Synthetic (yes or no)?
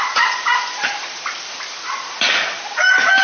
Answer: no